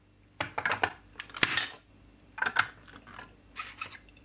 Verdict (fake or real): real